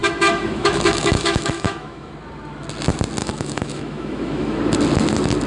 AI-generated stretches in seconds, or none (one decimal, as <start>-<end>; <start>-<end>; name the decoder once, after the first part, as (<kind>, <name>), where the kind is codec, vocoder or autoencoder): 0.0-2.1 (autoencoder, DAC-VAE); 3.2-4.6